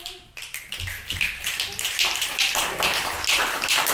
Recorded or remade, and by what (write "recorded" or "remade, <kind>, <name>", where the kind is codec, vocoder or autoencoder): remade, vocoder, BigVGAN v2